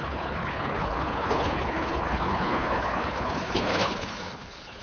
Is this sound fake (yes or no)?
yes